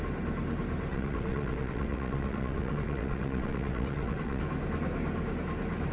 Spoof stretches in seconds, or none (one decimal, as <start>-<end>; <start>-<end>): 0.9-4.4